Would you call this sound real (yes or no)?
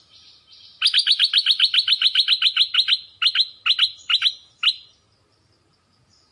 yes